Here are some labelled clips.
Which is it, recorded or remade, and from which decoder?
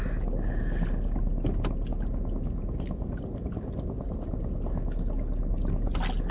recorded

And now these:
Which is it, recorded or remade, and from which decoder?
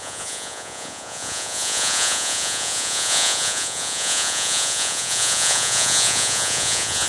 remade, vocoder, Vocos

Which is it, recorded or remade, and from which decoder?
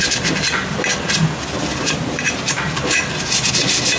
recorded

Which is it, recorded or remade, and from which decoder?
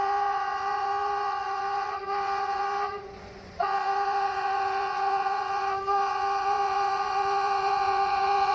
remade, vocoder, Vocos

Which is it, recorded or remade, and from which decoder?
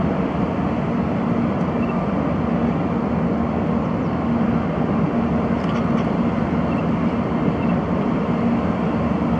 recorded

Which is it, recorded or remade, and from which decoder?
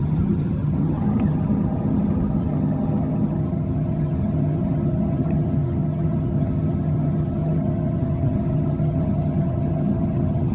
remade, vocoder, HiFi-GAN